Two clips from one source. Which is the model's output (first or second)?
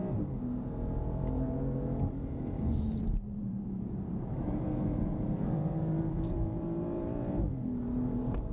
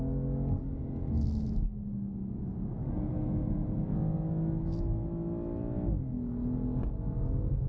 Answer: first